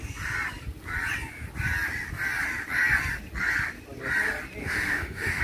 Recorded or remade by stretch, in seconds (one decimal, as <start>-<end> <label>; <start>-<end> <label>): 0.0-4.6 recorded; 4.6-5.4 remade